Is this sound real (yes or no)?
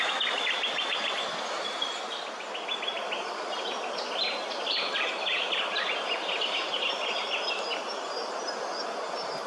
yes